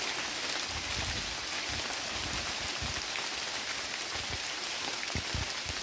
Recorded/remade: recorded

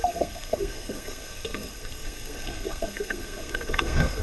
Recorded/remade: remade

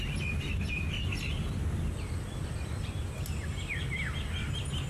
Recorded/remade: recorded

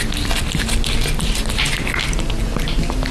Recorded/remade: recorded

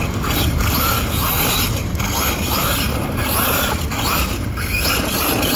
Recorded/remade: recorded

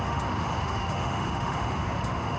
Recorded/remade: remade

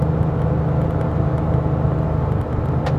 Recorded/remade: recorded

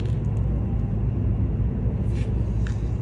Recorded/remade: recorded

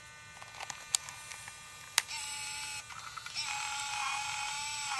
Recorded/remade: recorded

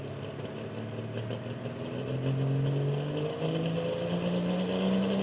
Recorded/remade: recorded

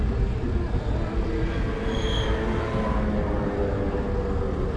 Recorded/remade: recorded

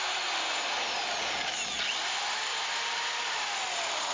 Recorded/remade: recorded